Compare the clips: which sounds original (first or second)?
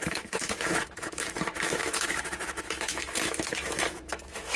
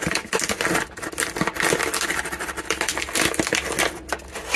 second